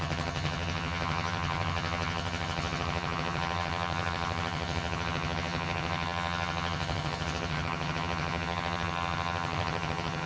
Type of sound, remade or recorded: remade